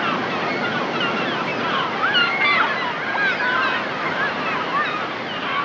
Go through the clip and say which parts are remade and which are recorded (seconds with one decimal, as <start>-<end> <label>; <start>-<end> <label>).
0.0-5.6 recorded